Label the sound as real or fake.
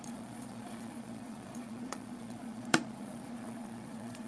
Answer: fake